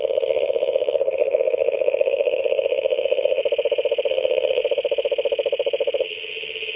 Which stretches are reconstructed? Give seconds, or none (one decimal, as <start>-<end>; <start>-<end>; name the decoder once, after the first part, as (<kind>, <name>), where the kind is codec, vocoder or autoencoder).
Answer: 0.0-3.4 (vocoder, HiFi-GAN); 4.1-4.6; 6.0-6.8